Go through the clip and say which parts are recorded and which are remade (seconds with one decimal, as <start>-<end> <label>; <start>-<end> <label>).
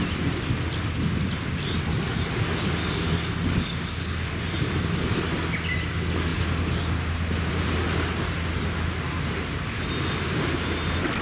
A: 0.0-2.8 recorded; 2.8-4.7 remade; 4.7-11.2 recorded